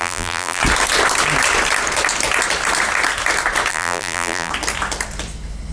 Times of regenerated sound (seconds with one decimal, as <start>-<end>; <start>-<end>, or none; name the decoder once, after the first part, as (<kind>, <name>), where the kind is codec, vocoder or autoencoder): 0.0-0.6 (vocoder, BigVGAN v2); 3.7-4.5